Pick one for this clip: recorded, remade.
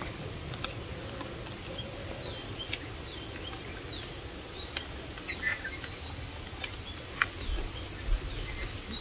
recorded